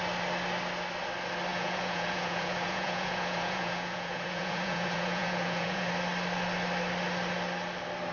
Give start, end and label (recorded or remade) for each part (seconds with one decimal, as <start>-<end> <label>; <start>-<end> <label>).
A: 0.0-1.5 recorded; 1.5-5.9 remade; 5.9-8.1 recorded